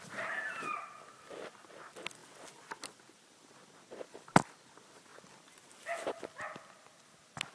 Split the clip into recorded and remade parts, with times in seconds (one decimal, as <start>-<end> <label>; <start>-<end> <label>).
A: 0.0-7.5 recorded